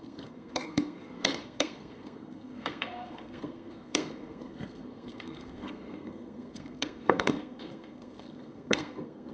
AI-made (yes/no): yes